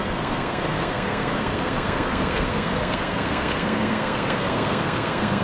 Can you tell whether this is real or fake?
fake